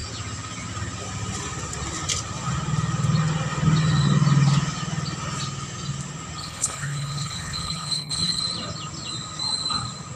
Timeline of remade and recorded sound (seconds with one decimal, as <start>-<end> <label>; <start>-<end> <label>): 0.0-6.4 recorded; 6.4-8.4 remade; 8.4-10.2 recorded